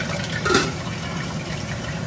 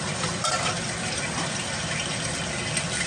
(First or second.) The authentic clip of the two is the second